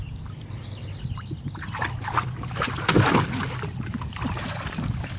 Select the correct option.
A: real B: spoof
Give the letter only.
A